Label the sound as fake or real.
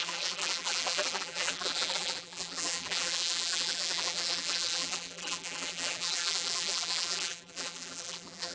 fake